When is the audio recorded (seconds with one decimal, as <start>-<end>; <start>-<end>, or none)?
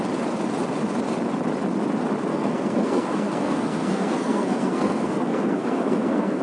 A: 0.0-2.3